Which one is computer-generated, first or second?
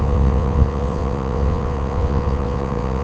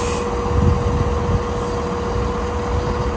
first